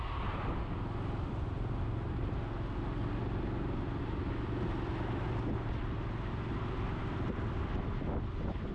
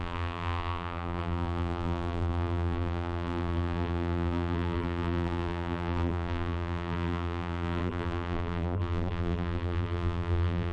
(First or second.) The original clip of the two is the first